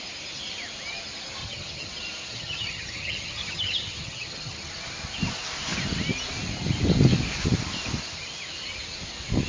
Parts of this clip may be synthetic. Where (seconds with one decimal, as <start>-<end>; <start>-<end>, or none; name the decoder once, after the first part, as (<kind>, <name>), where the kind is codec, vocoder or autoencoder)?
1.4-1.9 (vocoder, HiFi-GAN); 2.3-4.7